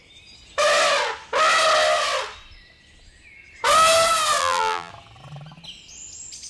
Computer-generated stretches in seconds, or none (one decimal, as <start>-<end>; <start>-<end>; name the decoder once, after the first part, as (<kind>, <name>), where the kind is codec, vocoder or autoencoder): 4.4-4.9 (vocoder, BigVGAN v2)